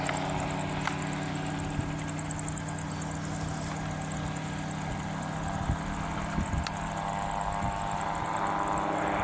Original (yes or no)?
yes